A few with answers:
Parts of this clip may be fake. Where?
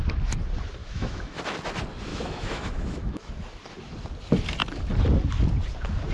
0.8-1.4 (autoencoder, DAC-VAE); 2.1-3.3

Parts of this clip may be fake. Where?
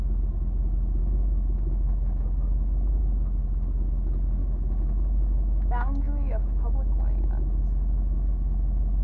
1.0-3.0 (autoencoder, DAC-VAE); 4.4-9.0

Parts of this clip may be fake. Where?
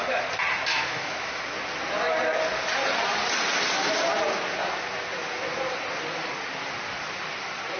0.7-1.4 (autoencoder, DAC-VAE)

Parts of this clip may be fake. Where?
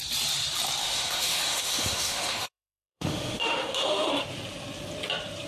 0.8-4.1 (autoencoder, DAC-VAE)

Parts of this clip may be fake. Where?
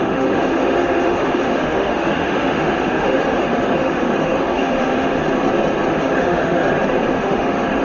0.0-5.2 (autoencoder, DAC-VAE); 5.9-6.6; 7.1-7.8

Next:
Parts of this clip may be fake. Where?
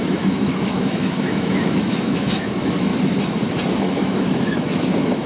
0.0-2.9 (autoencoder, DAC-VAE); 3.8-5.3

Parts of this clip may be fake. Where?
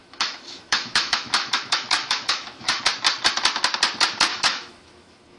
0.0-2.8 (autoencoder, DAC-VAE); 4.3-5.4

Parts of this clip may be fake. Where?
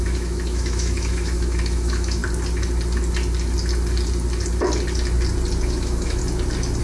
0.0-2.2 (autoencoder, DAC-VAE); 5.7-6.2